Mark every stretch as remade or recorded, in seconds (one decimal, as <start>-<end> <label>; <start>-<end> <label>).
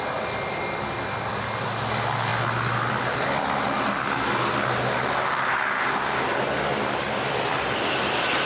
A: 0.0-8.5 recorded